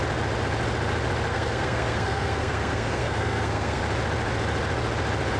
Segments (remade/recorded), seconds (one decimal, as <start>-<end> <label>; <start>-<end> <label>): 0.0-1.3 recorded; 1.3-3.8 remade; 3.8-5.4 recorded